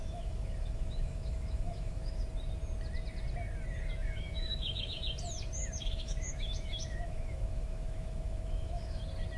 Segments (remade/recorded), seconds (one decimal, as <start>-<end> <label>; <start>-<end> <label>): 0.0-2.2 remade; 2.2-4.0 recorded; 4.0-5.0 remade; 5.0-5.8 recorded; 5.8-9.0 remade; 9.0-9.4 recorded